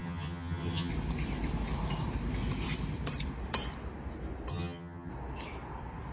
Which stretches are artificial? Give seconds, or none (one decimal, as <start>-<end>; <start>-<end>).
0.0-0.9; 4.5-5.1